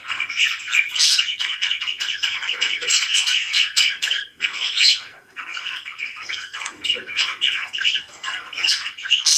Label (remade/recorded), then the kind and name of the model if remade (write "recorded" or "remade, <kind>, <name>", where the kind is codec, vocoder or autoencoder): remade, codec, SNAC